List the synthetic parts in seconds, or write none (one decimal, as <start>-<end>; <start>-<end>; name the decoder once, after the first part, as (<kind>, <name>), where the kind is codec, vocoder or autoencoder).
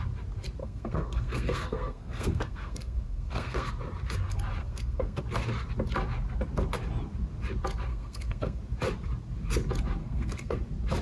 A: 0.6-3.7 (codec, SNAC); 4.6-5.2; 7.9-8.6; 10.0-10.6